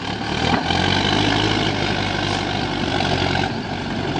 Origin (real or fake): real